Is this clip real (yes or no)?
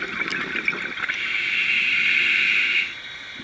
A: yes